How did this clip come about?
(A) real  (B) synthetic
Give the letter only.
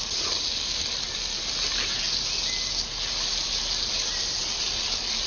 A